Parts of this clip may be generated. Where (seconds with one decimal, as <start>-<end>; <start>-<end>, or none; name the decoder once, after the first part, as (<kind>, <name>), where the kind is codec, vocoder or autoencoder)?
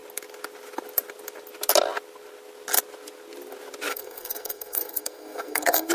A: 3.9-5.9 (codec, SNAC)